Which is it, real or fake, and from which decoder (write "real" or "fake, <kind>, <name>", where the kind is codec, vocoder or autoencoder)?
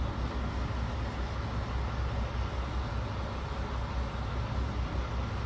real